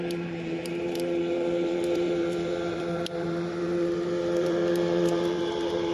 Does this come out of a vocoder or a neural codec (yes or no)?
yes